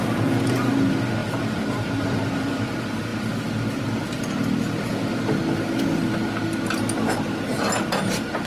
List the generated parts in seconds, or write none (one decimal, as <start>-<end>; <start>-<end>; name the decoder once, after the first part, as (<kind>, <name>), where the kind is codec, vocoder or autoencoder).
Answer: 1.2-2.7 (vocoder, BigVGAN v2)